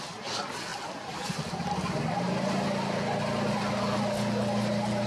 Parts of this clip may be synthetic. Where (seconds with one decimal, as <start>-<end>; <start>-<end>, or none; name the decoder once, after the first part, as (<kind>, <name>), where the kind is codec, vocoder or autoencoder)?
none